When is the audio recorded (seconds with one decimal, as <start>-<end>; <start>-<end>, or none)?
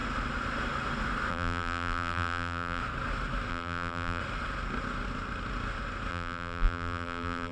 0.0-1.3; 2.8-3.5; 4.2-6.1